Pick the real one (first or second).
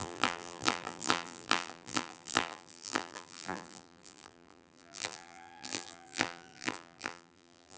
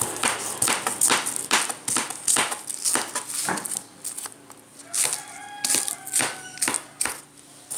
second